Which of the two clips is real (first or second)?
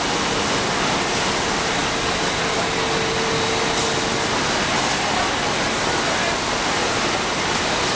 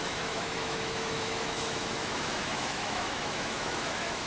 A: first